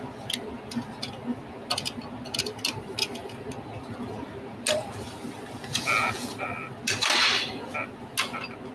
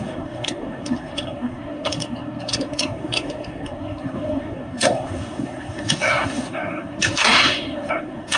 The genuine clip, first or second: first